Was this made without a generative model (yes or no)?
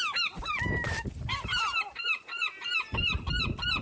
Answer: yes